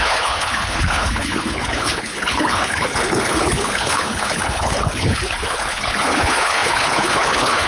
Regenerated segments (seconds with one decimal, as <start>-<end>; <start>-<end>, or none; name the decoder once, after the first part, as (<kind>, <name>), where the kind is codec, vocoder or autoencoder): 0.0-7.7 (codec, HILCodec)